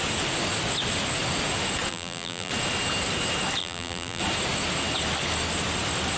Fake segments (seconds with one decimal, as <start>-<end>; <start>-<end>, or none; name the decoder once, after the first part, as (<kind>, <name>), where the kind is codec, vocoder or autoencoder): 1.9-2.5 (vocoder, BigVGAN v2); 3.6-4.2